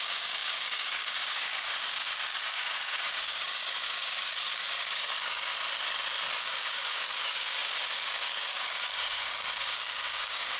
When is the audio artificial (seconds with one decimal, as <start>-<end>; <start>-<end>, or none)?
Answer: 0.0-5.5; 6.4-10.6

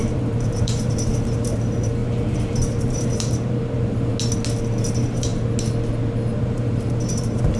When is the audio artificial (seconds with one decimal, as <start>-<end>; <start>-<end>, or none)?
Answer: 0.0-4.1; 4.8-5.3; 6.4-7.6

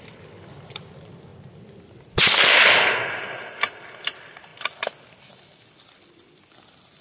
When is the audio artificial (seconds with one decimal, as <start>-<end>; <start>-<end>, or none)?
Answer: 0.0-1.3; 3.3-4.5; 5.2-7.0

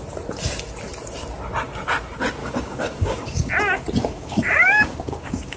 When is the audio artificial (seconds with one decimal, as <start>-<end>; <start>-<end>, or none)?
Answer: 2.4-3.5; 4.0-5.6

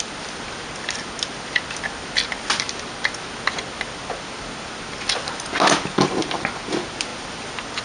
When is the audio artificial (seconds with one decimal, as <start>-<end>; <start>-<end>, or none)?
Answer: none

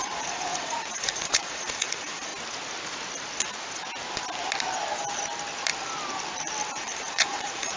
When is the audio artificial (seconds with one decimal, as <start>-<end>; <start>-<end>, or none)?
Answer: 0.0-2.3; 6.7-7.8

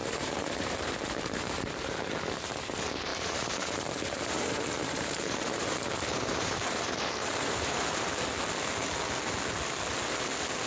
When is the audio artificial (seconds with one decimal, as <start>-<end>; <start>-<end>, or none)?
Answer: 0.0-2.0; 3.1-8.1

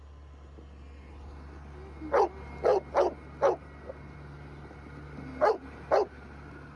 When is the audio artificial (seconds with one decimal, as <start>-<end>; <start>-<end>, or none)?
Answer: none